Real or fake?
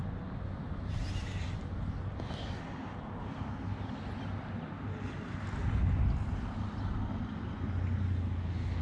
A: real